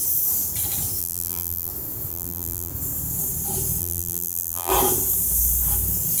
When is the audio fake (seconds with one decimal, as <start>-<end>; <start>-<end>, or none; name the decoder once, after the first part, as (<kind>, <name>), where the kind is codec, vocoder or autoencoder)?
1.0-1.7 (vocoder, BigVGAN v2); 2.1-2.7; 3.8-4.7